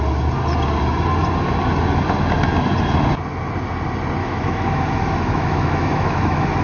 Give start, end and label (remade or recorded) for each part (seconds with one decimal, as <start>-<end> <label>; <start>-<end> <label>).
0.0-4.2 recorded; 4.2-6.6 remade